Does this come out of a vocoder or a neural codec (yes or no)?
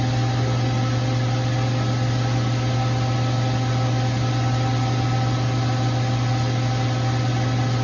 no